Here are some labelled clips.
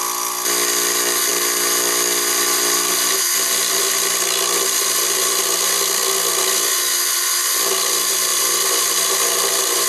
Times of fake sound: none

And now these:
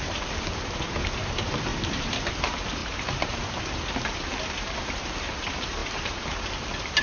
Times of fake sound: 1.7-2.3 (vocoder, BigVGAN v2); 2.8-3.6

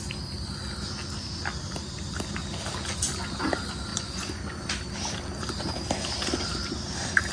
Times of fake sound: 3.9-4.5 (vocoder, Vocos)